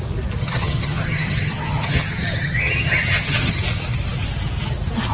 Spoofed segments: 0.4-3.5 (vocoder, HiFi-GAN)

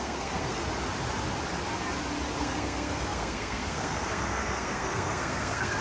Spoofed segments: 0.0-0.6 (codec, SNAC); 2.4-5.8

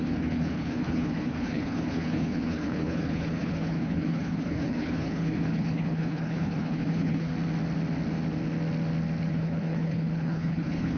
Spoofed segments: 0.0-7.3 (codec, HILCodec); 9.3-11.0